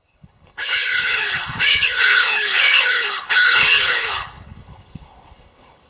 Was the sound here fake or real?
fake